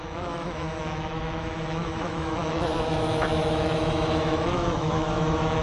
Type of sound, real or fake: fake